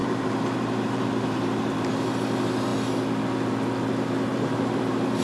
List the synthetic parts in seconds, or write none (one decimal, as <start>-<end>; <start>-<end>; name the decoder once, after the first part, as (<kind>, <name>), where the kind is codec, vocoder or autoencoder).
0.0-1.9 (vocoder, BigVGAN v2); 4.3-5.2